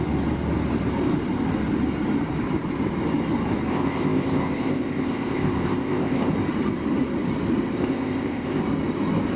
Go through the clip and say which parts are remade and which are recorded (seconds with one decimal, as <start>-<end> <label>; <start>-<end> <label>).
0.0-3.7 recorded; 3.7-6.3 remade; 6.3-7.8 recorded; 7.8-8.6 remade; 8.6-9.4 recorded